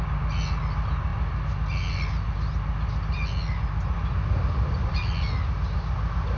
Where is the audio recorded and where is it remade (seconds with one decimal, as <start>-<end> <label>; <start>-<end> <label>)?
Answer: 0.0-6.4 recorded